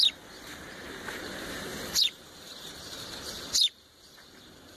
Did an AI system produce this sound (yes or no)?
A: yes